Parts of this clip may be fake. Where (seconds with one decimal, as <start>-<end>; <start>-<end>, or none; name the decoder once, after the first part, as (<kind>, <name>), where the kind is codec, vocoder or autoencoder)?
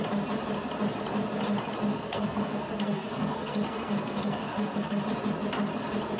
1.9-5.0 (codec, SNAC)